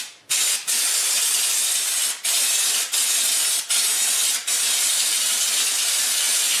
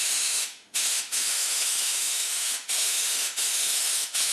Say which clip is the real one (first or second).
first